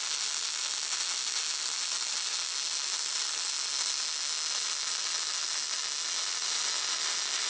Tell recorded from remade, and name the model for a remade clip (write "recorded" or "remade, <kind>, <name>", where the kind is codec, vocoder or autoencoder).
recorded